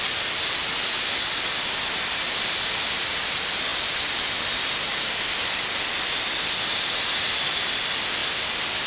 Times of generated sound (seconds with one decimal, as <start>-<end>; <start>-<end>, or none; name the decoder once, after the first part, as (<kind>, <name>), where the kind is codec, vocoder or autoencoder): none